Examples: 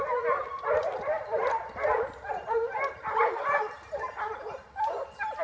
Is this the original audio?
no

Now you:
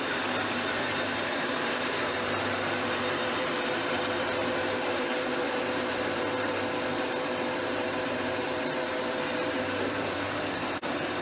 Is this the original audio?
no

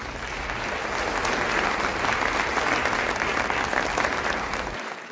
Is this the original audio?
yes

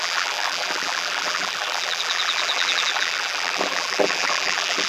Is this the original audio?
no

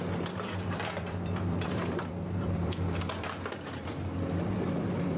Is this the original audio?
no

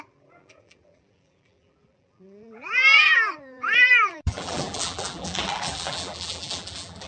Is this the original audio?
no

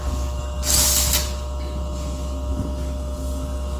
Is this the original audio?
yes